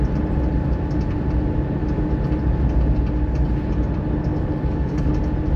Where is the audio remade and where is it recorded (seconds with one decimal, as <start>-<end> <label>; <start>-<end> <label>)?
0.0-4.3 recorded; 4.3-5.1 remade; 5.1-5.6 recorded